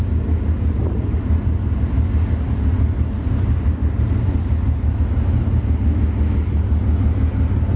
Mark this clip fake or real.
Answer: real